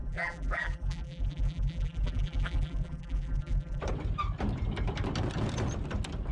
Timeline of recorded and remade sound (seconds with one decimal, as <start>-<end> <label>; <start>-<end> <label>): 0.0-3.8 remade; 3.8-6.3 recorded